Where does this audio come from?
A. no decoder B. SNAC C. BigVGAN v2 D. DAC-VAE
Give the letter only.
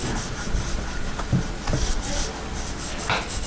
A